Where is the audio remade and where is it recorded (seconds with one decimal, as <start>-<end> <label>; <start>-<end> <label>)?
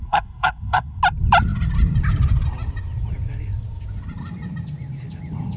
0.0-1.0 remade; 1.0-5.6 recorded